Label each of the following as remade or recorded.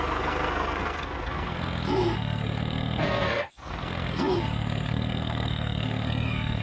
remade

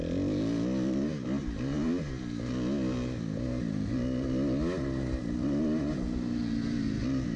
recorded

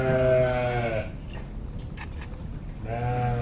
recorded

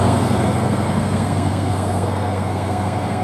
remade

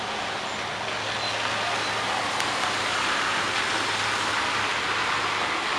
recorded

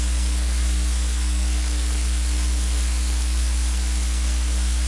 remade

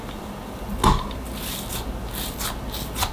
recorded